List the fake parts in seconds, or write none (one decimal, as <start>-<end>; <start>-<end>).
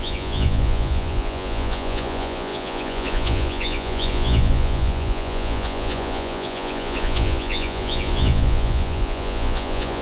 0.0-10.0